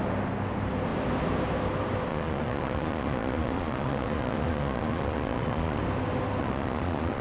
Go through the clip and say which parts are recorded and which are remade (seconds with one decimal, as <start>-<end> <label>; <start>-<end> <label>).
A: 0.0-2.1 recorded; 2.1-5.8 remade; 5.8-6.4 recorded; 6.4-7.2 remade